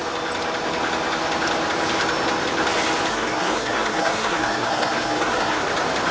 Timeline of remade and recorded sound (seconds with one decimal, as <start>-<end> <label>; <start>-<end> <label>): 0.0-3.1 recorded; 3.1-5.6 remade; 5.6-6.1 recorded